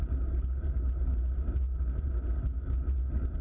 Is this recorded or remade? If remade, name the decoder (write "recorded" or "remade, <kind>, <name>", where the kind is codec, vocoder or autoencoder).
recorded